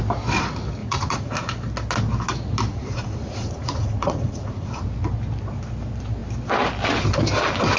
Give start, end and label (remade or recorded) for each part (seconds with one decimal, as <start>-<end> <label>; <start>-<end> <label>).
0.0-0.8 recorded; 0.8-1.3 remade; 1.3-2.7 recorded; 2.7-4.8 remade; 4.8-7.8 recorded